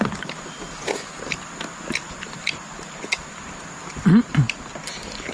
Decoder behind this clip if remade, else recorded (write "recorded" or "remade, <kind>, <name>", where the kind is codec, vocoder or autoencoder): recorded